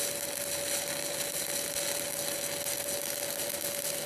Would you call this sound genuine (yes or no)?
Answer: yes